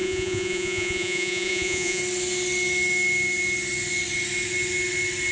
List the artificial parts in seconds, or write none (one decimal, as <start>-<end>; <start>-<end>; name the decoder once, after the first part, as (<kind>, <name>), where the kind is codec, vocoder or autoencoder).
0.0-2.0 (vocoder, Vocos)